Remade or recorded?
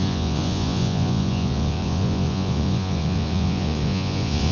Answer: remade